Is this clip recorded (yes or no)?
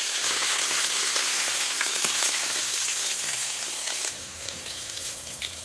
no